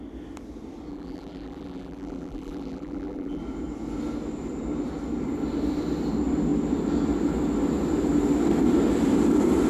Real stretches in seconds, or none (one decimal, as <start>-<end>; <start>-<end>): 0.0-0.9; 3.4-9.7